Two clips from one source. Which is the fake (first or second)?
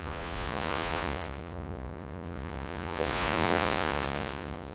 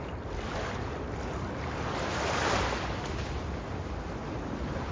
first